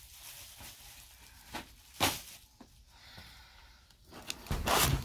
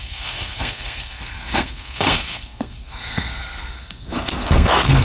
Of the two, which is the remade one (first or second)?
second